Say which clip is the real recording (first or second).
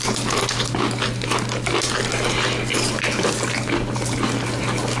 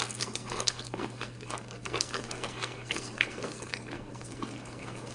first